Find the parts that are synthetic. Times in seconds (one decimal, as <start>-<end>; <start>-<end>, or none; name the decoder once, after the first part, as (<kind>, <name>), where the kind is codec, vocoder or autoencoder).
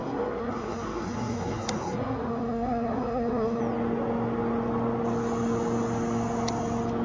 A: 0.0-3.6 (codec, SNAC)